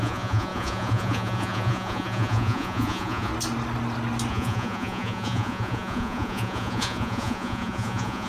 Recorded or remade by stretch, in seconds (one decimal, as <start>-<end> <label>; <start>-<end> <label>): 0.0-3.3 remade; 3.3-4.3 recorded; 4.3-8.3 remade